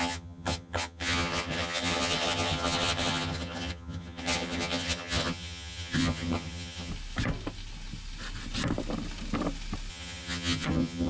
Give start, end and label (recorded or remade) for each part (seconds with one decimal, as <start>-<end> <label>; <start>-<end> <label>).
0.0-6.9 remade; 6.9-9.9 recorded; 9.9-11.1 remade